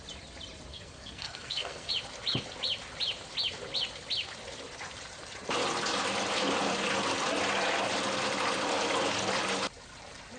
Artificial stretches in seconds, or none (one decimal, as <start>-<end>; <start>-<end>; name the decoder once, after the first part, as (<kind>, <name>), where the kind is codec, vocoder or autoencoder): 0.7-1.9 (codec, SNAC)